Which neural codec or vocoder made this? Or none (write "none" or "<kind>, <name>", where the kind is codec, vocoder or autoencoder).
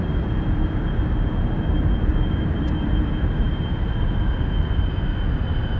none